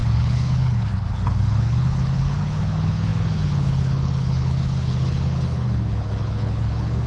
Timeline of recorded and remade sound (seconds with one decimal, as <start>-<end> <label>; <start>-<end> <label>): 0.0-7.1 remade